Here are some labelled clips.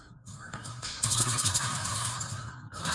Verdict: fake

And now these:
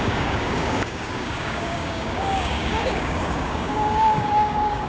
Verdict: fake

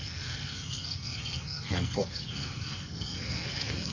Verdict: fake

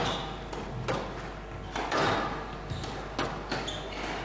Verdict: real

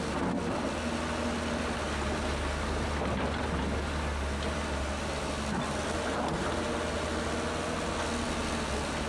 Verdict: real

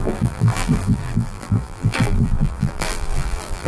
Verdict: fake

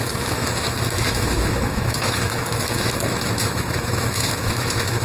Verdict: fake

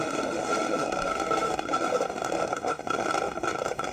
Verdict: fake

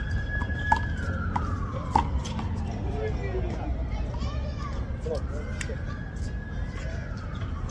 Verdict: real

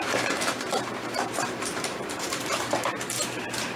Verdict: fake